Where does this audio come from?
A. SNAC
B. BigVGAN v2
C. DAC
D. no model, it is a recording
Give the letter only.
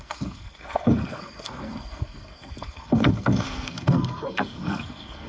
A